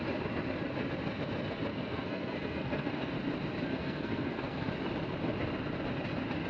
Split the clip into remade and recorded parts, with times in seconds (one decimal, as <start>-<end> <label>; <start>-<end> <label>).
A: 0.0-1.7 recorded; 1.7-3.1 remade; 3.1-3.7 recorded; 3.7-4.7 remade; 4.7-6.5 recorded